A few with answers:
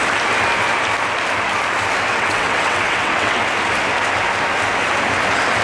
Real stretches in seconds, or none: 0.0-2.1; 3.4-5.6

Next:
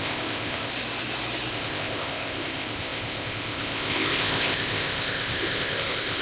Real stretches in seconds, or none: 0.7-1.5

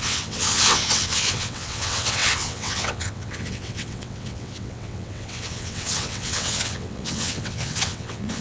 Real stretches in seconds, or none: none